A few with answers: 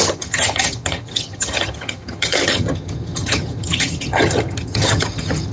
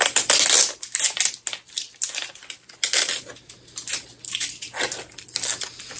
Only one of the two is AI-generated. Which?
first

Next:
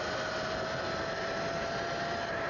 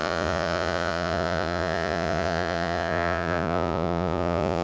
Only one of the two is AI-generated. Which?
second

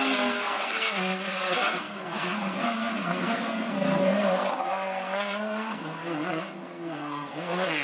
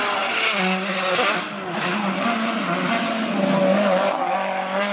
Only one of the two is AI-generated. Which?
first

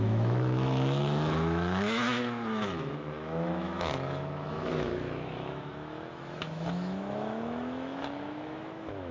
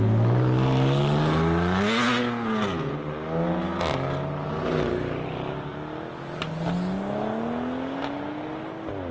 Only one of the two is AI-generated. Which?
first